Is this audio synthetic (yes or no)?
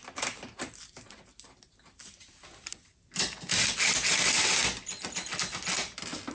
no